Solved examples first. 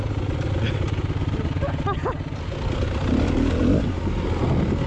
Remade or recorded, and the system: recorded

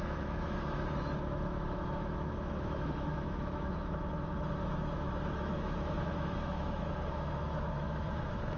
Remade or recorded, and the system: remade, autoencoder, DAC-VAE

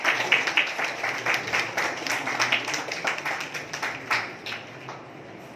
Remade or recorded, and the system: recorded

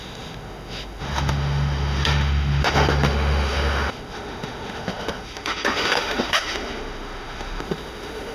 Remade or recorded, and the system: remade, autoencoder, DAC-VAE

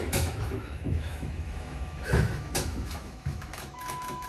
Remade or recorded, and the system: remade, autoencoder, DAC-VAE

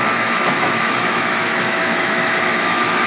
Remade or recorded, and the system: remade, autoencoder, DAC-VAE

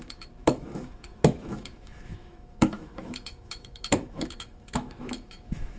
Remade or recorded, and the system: remade, autoencoder, DAC-VAE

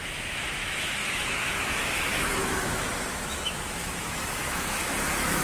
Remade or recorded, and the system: remade, autoencoder, DAC-VAE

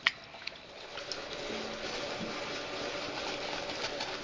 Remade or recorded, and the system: recorded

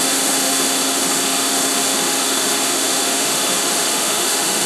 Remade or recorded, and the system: remade, autoencoder, DAC-VAE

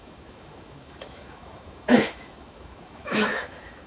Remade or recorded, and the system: remade, autoencoder, DAC-VAE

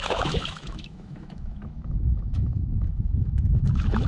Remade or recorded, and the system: remade, autoencoder, DAC-VAE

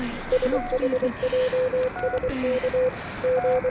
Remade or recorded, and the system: recorded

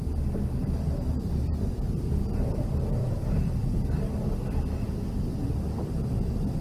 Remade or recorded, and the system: recorded